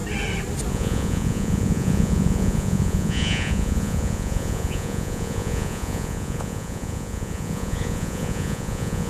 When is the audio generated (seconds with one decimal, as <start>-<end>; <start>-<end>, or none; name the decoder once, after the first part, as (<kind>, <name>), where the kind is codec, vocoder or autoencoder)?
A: 0.7-9.1 (vocoder, Vocos)